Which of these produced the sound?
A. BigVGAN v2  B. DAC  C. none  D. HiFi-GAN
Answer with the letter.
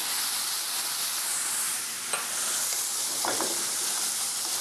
C